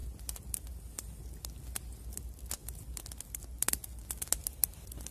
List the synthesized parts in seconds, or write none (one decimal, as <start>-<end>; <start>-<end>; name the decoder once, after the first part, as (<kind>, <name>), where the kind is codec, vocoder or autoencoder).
none